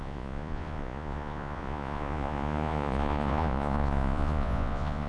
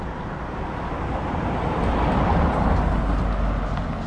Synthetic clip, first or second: first